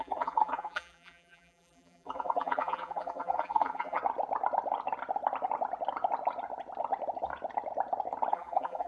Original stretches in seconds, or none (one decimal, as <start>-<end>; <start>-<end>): 4.0-8.3